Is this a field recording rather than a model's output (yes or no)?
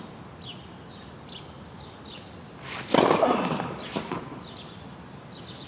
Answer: yes